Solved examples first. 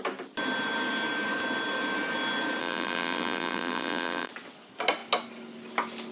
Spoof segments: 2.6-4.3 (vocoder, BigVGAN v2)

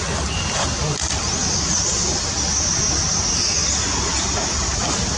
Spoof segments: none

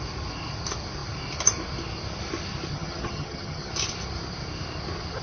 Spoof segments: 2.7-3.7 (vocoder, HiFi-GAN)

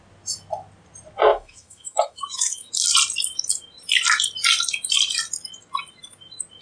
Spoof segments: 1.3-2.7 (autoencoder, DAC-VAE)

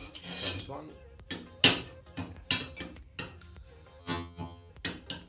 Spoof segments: 4.0-4.7 (vocoder, HiFi-GAN)

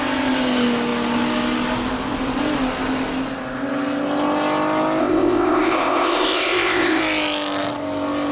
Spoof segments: 5.0-7.0 (codec, ZipCodec)